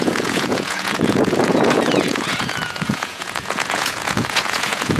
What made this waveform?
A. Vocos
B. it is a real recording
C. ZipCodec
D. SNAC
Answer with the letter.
A